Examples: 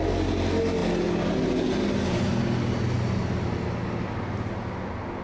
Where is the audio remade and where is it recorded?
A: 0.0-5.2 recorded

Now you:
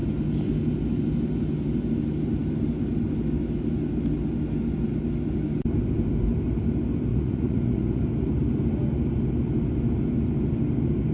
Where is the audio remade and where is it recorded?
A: 0.0-7.1 recorded; 7.1-8.0 remade; 8.0-11.1 recorded

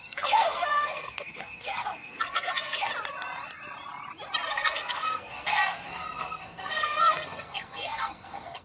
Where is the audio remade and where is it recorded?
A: 0.0-2.9 remade; 2.9-4.5 recorded; 4.5-8.6 remade

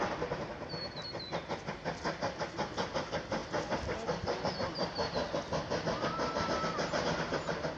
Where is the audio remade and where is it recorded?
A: 0.0-7.8 recorded